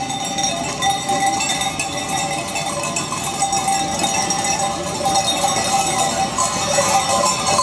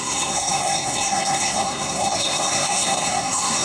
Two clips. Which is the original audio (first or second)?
first